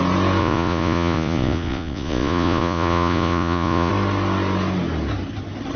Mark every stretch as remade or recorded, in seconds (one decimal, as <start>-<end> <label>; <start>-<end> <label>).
0.0-0.4 recorded; 0.4-3.9 remade; 3.9-5.8 recorded